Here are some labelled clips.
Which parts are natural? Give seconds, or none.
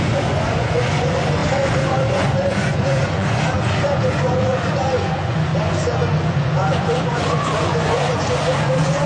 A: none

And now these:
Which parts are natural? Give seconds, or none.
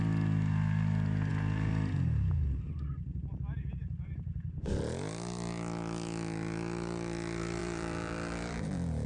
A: 0.0-7.6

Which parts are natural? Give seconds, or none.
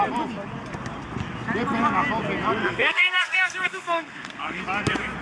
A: 0.0-2.6; 4.6-5.2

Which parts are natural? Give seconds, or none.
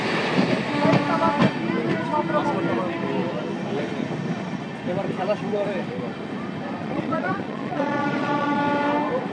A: 0.0-6.8; 8.6-9.3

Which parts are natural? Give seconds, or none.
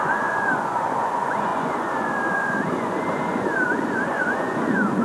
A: none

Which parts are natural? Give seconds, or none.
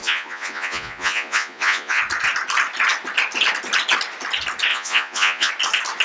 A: 2.0-4.7; 5.5-6.0